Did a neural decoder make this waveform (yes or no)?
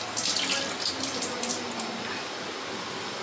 no